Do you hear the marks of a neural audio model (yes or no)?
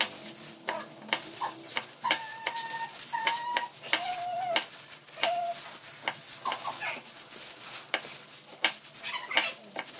no